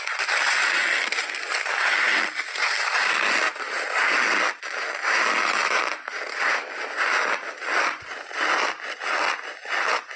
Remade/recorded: recorded